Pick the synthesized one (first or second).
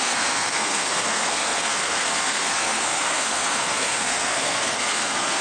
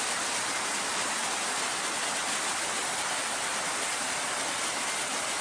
first